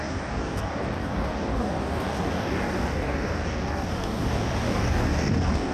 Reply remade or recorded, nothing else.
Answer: remade